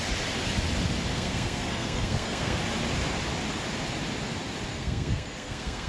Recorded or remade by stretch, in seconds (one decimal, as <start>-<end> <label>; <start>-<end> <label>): 0.0-1.1 recorded; 1.1-2.6 remade; 2.6-4.7 recorded; 4.7-5.9 remade